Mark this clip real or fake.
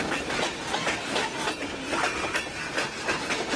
real